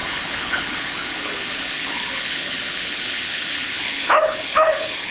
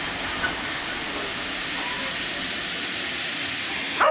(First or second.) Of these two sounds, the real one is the second